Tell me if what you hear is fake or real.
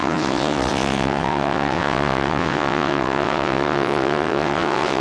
fake